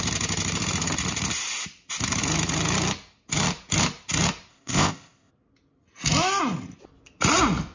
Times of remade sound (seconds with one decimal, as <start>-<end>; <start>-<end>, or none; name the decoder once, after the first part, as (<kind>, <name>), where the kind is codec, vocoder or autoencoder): 4.5-5.3 (codec, ZipCodec)